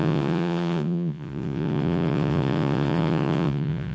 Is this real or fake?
fake